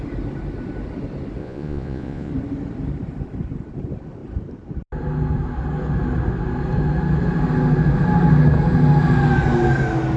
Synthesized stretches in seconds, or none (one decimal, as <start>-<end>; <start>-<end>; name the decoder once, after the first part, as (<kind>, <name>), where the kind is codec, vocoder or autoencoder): 1.4-2.3 (vocoder, Vocos)